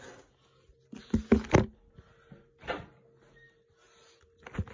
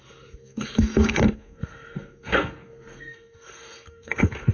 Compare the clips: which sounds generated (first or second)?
second